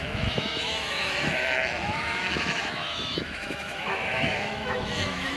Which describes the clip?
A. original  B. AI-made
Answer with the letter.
B